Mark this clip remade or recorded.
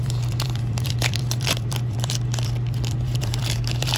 remade